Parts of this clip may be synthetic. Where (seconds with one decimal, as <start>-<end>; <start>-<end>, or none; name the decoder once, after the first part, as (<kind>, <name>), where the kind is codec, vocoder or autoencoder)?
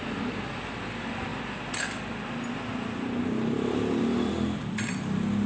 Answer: none